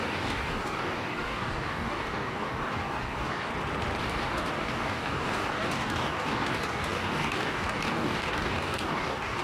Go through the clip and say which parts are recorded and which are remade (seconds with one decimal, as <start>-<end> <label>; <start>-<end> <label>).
0.0-3.5 remade; 3.5-4.0 recorded; 4.0-9.4 remade